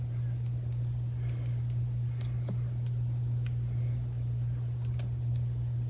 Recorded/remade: recorded